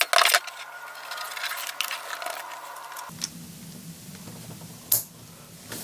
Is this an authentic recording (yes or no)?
yes